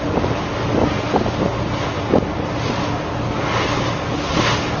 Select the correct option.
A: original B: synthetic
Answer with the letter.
A